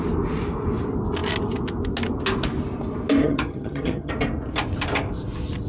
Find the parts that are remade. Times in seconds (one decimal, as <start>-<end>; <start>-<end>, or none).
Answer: 3.2-4.1

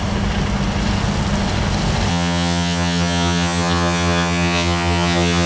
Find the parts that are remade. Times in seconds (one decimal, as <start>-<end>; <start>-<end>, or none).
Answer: 2.1-5.5

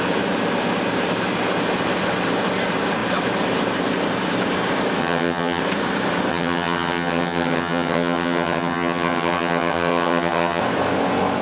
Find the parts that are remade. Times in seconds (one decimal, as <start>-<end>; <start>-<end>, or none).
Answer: 5.0-5.6; 6.3-10.6